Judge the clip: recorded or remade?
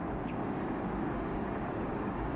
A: remade